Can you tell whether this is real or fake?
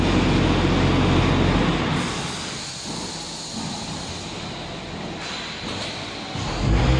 real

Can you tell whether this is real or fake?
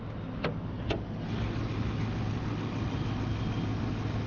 real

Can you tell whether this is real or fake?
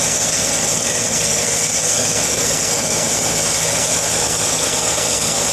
fake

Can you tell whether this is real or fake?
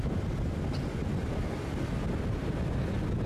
real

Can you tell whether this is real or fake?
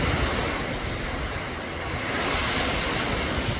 real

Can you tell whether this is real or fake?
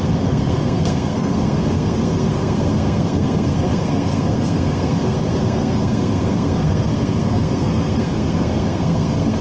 fake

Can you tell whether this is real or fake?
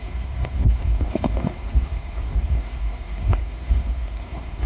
fake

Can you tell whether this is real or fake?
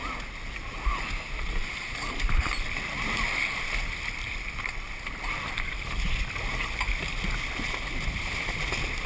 real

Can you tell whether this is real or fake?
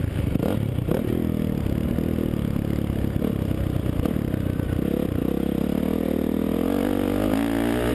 real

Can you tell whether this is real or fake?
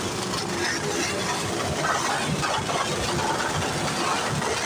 real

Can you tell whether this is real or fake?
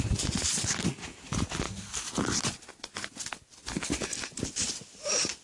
real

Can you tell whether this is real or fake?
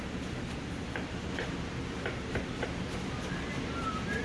real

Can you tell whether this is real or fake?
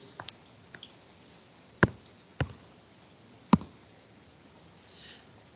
real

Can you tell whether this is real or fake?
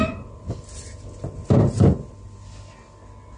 real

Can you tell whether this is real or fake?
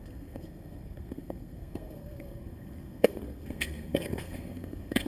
fake